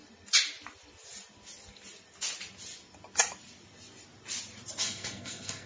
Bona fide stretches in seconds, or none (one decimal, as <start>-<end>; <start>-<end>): 0.0-4.8